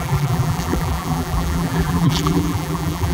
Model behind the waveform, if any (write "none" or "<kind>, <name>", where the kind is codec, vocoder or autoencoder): vocoder, BigVGAN v2